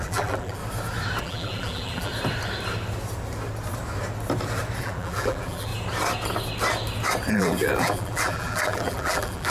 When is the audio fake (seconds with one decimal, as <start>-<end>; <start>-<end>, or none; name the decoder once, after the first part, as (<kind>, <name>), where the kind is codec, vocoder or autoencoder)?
0.0-0.6 (vocoder, BigVGAN v2); 1.2-2.1; 4.8-5.7; 7.3-9.5